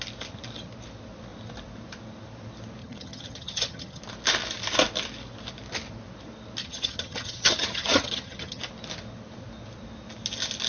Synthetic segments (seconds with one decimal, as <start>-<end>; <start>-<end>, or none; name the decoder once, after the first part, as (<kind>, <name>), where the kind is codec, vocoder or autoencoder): 2.8-4.0 (vocoder, HiFi-GAN); 6.6-8.6